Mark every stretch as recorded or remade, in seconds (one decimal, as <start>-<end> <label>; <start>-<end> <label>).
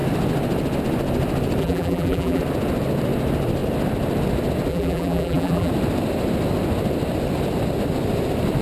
0.0-1.6 recorded; 1.6-2.4 remade; 2.4-4.7 recorded; 4.7-5.7 remade; 5.7-8.6 recorded